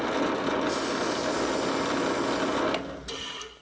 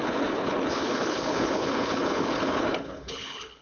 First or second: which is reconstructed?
second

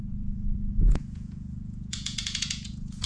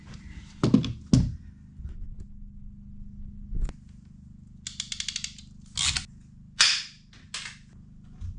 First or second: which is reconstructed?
first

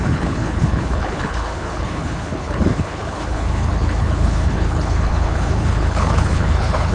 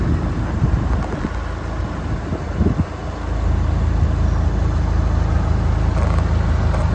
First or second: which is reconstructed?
first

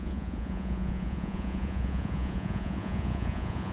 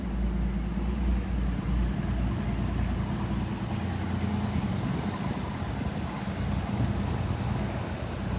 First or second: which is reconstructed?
first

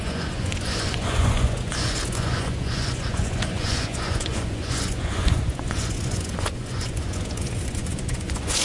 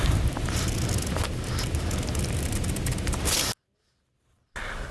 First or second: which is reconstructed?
first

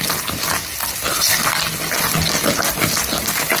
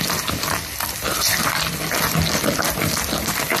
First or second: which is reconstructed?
second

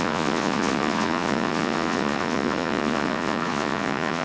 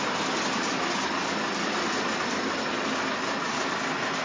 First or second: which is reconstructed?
first